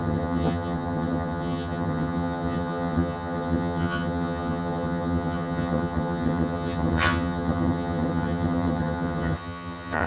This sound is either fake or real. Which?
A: fake